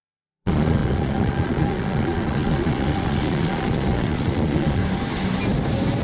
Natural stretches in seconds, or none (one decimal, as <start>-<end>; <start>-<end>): 4.8-6.0